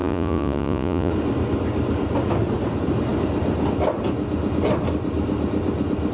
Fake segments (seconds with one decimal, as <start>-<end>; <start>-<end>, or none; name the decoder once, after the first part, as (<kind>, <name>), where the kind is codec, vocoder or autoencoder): 0.0-1.1 (vocoder, Vocos)